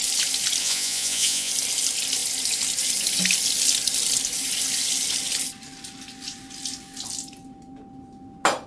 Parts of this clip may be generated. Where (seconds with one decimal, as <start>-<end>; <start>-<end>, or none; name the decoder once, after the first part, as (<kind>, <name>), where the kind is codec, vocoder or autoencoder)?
0.6-1.5 (vocoder, Vocos)